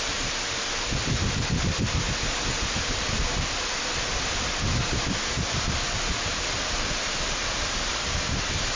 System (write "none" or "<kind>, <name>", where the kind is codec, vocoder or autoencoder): none